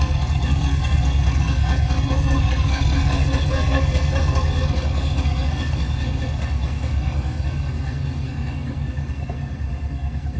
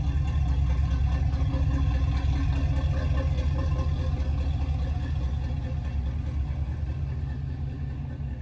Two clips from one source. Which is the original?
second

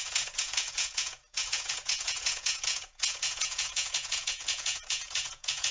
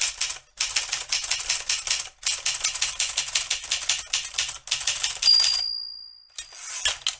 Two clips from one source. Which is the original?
second